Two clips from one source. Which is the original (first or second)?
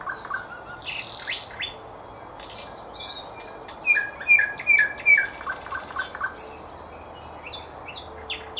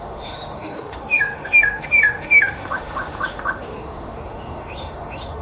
first